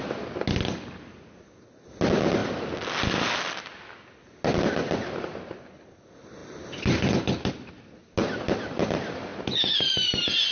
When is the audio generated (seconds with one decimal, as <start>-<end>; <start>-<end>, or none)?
none